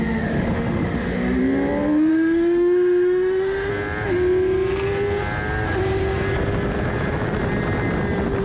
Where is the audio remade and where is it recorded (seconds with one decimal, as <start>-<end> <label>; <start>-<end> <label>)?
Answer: 0.0-1.4 remade; 1.4-2.1 recorded; 2.1-3.7 remade; 3.7-8.4 recorded